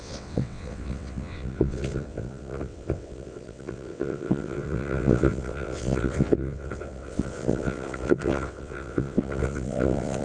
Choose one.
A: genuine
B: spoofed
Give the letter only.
B